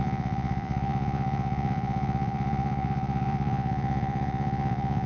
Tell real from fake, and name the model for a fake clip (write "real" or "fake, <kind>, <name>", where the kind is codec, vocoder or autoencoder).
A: fake, vocoder, Vocos